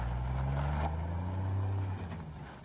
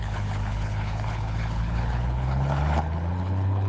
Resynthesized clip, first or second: second